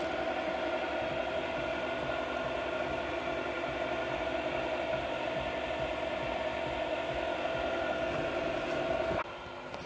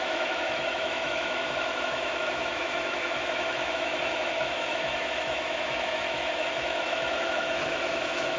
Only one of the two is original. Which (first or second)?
first